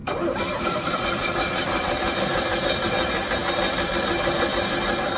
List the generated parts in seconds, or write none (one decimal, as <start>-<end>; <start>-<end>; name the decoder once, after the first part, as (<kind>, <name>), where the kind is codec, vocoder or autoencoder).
none